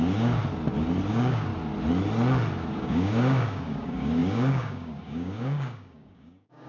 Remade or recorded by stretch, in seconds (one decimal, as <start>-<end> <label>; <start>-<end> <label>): 0.0-0.4 remade; 0.4-1.1 recorded; 1.1-1.5 remade; 1.5-2.7 recorded; 2.7-6.7 remade